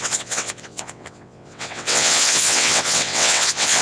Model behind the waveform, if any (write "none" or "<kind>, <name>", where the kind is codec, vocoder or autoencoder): vocoder, WaveNeXt